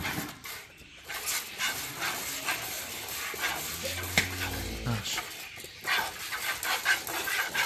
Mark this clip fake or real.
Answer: real